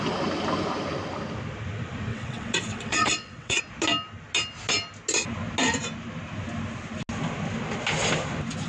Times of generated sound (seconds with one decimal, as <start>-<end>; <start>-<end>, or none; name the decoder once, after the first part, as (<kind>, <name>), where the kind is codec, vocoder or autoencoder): 2.1-3.6 (vocoder, WaveNeXt)